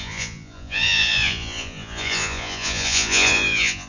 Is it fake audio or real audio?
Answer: fake